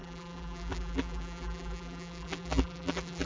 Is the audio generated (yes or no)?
yes